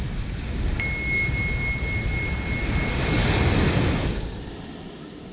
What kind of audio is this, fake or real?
real